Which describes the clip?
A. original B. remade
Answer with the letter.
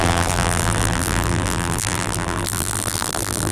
B